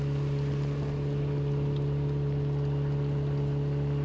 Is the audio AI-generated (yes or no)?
no